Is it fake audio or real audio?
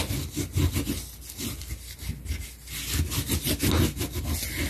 real